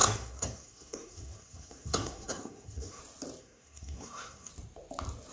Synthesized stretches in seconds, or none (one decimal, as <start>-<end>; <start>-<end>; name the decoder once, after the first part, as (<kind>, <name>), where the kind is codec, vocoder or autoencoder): 0.0-3.0 (codec, SNAC); 3.4-4.5